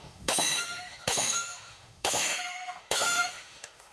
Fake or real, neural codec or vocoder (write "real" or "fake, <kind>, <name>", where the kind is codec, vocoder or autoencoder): fake, autoencoder, DAC-VAE